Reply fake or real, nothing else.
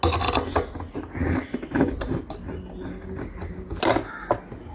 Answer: real